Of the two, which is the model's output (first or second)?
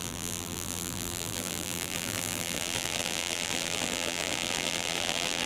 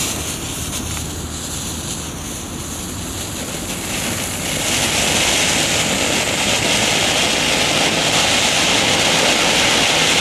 first